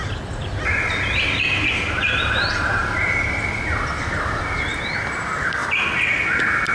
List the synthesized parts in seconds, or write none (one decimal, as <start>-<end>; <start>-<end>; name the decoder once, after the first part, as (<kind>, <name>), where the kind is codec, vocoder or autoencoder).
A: none